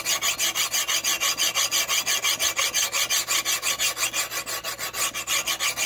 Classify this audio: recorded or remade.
recorded